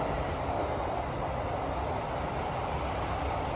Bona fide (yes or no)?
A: yes